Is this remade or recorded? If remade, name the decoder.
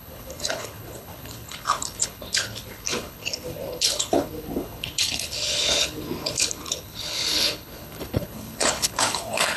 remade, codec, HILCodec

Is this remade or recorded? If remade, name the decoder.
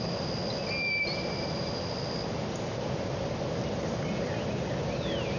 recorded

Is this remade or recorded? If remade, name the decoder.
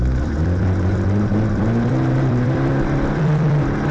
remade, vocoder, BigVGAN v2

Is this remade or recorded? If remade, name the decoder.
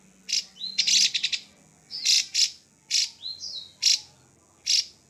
recorded